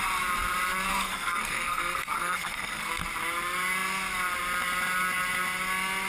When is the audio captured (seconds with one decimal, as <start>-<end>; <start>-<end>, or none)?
0.0-0.9; 2.9-6.1